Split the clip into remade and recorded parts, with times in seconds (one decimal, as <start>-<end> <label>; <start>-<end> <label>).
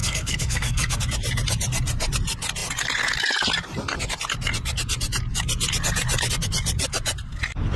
0.0-1.0 remade; 1.0-7.8 recorded